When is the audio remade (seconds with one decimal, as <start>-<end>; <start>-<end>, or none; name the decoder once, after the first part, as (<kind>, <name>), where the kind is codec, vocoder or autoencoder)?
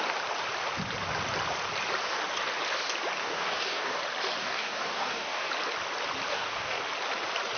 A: 3.2-4.0 (codec, DAC); 4.4-5.5; 6.3-6.8